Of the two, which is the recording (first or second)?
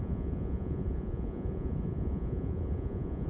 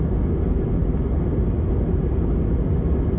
second